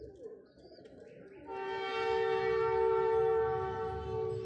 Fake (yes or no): no